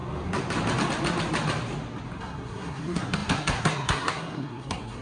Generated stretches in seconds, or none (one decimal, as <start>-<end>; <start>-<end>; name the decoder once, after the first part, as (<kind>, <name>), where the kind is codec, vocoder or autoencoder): 2.2-5.0 (codec, SNAC)